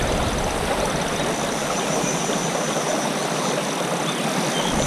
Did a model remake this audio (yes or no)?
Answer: no